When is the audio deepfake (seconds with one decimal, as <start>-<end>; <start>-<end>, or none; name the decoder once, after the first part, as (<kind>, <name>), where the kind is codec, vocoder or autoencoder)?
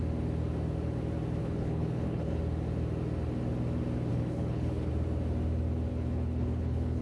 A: 1.4-2.4 (codec, HILCodec); 4.1-4.9; 5.9-7.0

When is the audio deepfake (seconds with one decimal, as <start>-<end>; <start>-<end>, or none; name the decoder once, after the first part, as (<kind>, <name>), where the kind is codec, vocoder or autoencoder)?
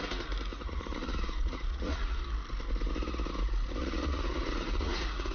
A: 0.5-2.2 (vocoder, Vocos); 3.8-5.3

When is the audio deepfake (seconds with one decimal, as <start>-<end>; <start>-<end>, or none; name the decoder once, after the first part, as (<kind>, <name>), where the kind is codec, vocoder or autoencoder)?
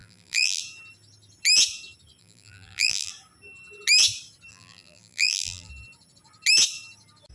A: 0.0-0.6 (vocoder, BigVGAN v2); 2.2-3.1; 4.5-5.7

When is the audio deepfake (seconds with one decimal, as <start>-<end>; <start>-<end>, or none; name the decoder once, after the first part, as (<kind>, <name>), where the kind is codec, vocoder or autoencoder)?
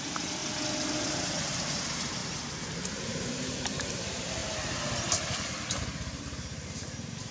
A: 0.0-0.4 (vocoder, BigVGAN v2); 1.4-2.2; 2.9-4.4; 5.8-7.3